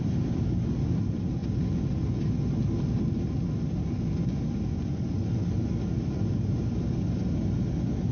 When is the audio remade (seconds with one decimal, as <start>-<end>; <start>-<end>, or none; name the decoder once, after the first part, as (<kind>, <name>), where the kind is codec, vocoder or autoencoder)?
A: none